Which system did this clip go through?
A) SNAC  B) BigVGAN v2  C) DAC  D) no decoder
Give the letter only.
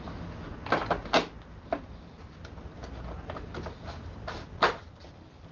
D